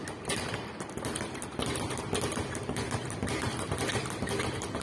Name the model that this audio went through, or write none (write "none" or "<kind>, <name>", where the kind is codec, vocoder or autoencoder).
none